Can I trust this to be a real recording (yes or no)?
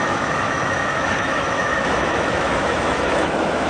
no